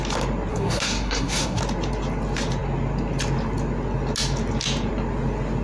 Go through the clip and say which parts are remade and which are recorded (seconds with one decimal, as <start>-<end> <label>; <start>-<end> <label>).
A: 0.0-0.5 recorded; 0.5-1.6 remade; 1.6-5.6 recorded